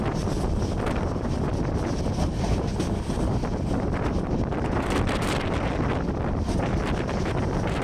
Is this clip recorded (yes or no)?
no